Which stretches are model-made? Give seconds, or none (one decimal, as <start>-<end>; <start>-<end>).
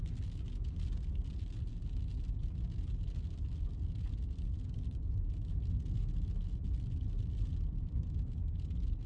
none